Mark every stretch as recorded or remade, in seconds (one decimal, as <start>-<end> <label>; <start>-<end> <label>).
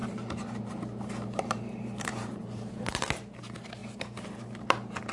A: 0.0-3.1 remade; 3.1-5.1 recorded